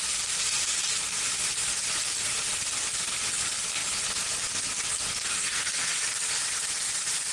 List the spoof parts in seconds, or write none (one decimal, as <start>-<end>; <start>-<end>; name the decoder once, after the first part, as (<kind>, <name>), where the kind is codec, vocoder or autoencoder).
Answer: 5.3-5.9 (codec, SNAC)